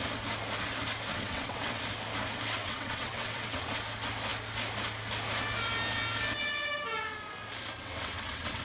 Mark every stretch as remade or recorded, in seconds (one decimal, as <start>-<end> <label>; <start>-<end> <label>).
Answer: 0.0-1.1 recorded; 1.1-1.8 remade; 1.8-2.6 recorded; 2.6-3.7 remade; 3.7-7.8 recorded; 7.8-8.6 remade